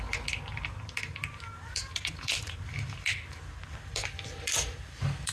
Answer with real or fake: real